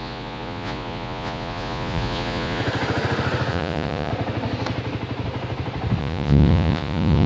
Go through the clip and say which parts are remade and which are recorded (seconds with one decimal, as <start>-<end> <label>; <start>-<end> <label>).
0.0-2.6 remade; 2.6-3.5 recorded; 3.5-4.1 remade; 4.1-6.0 recorded; 6.0-7.3 remade